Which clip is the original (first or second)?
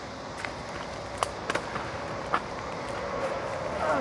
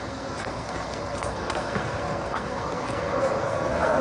first